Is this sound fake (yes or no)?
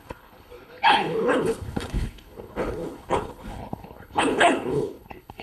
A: yes